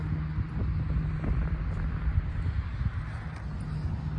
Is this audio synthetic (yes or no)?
no